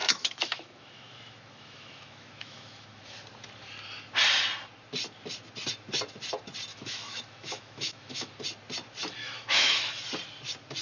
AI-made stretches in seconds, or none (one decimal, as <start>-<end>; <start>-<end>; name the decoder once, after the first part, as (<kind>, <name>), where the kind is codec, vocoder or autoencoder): 0.0-3.0 (autoencoder, DAC-VAE); 6.7-8.3; 9.2-10.0